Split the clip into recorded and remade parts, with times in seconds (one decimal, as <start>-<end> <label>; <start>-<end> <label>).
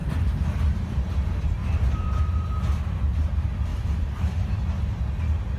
0.0-0.6 remade; 0.6-1.6 recorded; 1.6-2.2 remade; 2.2-3.7 recorded; 3.7-4.6 remade; 4.6-5.6 recorded